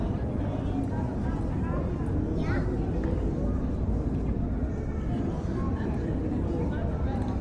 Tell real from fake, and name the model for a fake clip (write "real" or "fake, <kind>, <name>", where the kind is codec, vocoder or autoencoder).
real